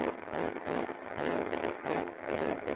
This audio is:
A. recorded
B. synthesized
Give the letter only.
B